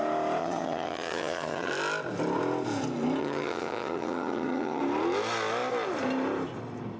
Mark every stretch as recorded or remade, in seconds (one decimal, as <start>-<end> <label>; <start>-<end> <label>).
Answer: 0.0-0.4 recorded; 0.4-1.7 remade; 1.7-3.2 recorded; 3.2-4.8 remade; 4.8-7.0 recorded